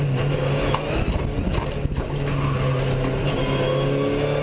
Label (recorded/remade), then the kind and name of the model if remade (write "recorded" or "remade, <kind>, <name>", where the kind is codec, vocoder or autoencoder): recorded